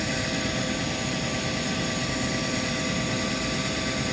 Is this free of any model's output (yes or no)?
yes